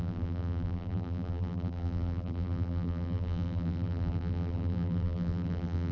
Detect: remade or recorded remade